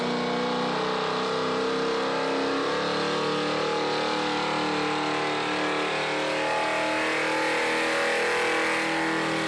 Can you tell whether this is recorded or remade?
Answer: recorded